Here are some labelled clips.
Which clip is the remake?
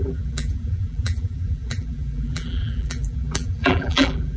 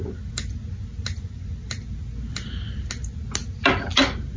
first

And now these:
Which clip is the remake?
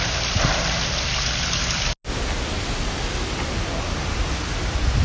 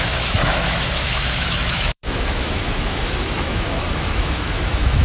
second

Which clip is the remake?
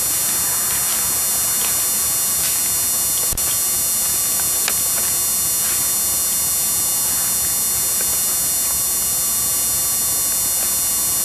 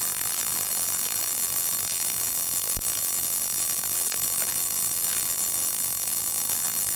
second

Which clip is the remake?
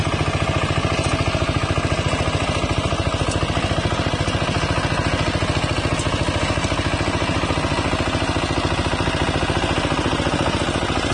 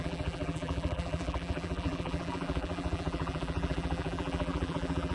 second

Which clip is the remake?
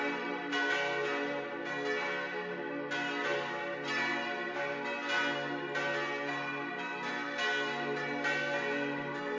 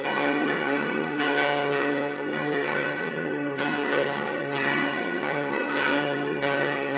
second